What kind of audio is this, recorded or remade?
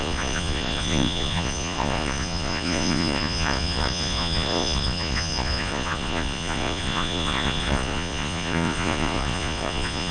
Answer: remade